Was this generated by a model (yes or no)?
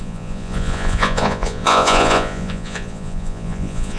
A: yes